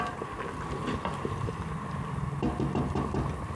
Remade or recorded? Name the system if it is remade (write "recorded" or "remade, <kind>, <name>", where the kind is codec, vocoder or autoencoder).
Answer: recorded